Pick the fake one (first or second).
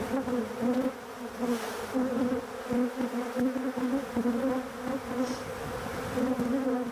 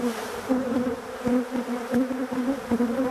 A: second